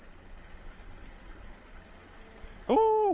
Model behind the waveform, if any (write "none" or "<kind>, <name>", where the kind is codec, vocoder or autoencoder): none